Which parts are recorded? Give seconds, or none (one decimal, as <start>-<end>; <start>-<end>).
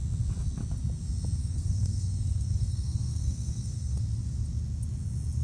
0.0-1.4; 4.0-5.4